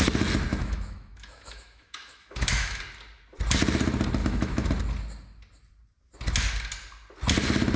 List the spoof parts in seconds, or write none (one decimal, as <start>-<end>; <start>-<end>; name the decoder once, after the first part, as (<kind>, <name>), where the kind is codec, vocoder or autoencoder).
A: 0.5-2.8 (autoencoder, DAC-VAE); 4.2-4.7